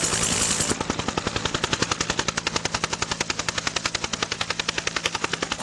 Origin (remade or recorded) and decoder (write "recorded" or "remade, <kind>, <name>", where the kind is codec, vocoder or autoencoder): recorded